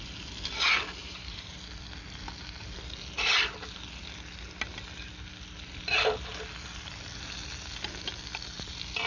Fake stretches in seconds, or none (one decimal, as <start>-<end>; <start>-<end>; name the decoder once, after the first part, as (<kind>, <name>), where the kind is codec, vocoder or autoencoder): 1.0-1.6 (vocoder, BigVGAN v2)